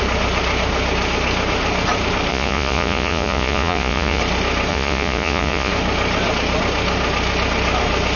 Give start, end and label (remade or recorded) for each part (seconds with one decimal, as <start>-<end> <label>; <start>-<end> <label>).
0.0-2.3 recorded; 2.3-4.2 remade; 4.2-4.7 recorded; 4.7-5.7 remade; 5.7-8.2 recorded